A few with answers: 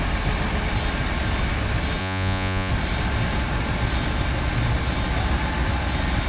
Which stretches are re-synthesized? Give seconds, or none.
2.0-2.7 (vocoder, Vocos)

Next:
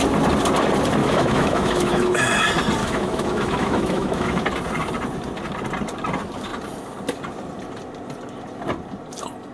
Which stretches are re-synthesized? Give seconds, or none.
1.0-2.2 (autoencoder, DAC-VAE); 2.8-4.4

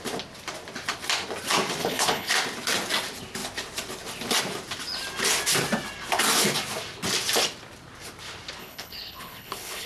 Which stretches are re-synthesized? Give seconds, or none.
1.8-2.3 (codec, HILCodec); 8.6-9.9

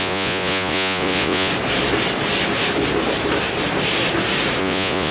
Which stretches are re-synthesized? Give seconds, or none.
0.0-1.5 (vocoder, Vocos); 4.6-5.1

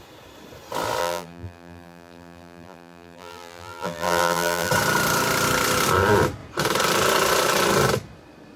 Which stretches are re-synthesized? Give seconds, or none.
1.0-4.7 (vocoder, BigVGAN v2)

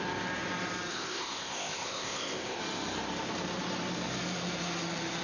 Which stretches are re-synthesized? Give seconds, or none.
0.9-2.6 (codec, ZipCodec)

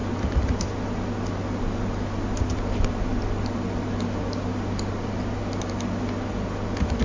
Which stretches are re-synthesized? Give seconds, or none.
none